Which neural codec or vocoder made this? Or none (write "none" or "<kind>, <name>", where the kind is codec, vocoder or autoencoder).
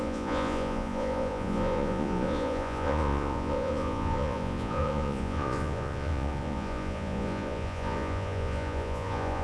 vocoder, Vocos